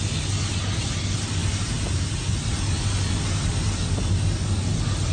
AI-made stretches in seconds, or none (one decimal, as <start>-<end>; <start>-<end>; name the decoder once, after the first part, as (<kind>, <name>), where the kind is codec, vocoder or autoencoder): 1.4-2.3 (vocoder, BigVGAN v2)